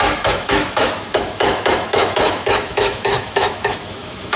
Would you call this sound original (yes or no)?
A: no